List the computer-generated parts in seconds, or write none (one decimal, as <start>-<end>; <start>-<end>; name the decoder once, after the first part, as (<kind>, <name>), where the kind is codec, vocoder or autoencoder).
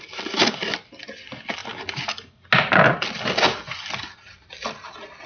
none